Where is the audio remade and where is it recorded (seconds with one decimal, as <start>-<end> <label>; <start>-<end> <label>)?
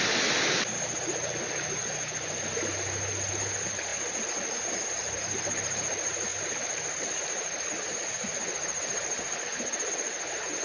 0.0-10.6 recorded